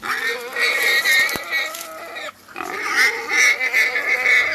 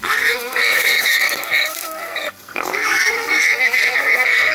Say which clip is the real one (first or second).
first